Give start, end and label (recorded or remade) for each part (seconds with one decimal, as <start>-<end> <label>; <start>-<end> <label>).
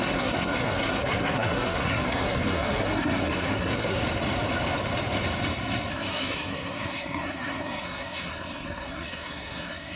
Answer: 0.0-4.0 remade; 4.0-5.9 recorded; 5.9-10.0 remade